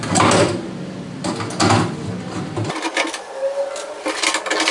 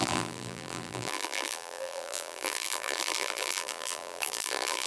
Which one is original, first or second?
first